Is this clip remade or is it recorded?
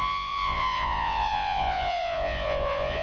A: remade